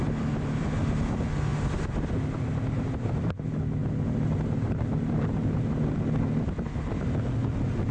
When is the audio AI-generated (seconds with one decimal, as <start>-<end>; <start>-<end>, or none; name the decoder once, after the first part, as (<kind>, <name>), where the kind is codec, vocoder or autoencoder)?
none